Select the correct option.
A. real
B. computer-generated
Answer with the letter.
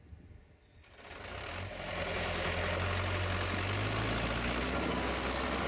A